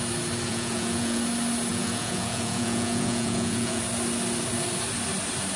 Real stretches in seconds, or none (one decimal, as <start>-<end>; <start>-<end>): 0.0-0.5; 1.2-1.7; 3.8-5.6

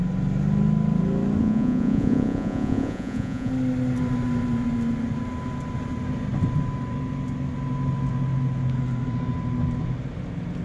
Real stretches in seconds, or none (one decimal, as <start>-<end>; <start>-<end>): 0.0-1.4; 3.5-10.6

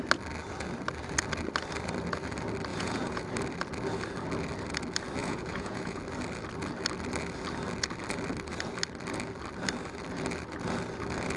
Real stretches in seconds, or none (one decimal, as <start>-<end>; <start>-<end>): 0.0-2.7; 3.3-5.2; 6.0-11.4

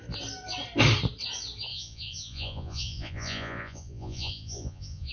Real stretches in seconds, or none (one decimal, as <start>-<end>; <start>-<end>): 0.0-1.7

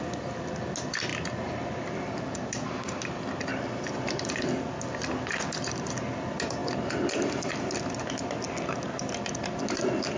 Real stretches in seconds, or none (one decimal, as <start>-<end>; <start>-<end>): 0.0-10.2

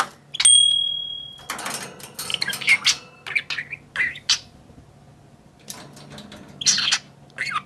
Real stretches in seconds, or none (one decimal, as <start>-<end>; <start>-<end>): 0.0-7.7

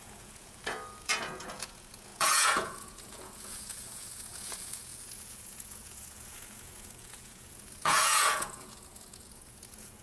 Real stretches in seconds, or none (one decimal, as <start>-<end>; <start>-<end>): none

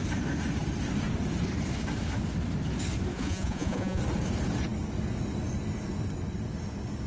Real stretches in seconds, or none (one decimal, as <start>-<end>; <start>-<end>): 0.0-3.1; 4.0-7.1